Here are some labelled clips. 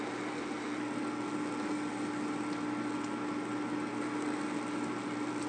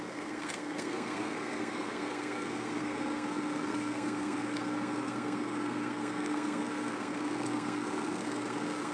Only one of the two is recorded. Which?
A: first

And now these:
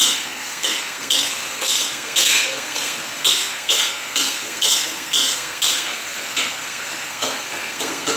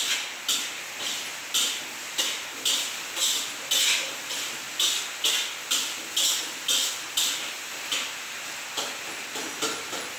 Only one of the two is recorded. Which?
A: second